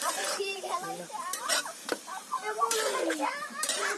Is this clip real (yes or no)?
no